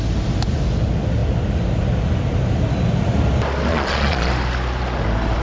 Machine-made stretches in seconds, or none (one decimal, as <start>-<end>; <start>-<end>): 3.7-4.3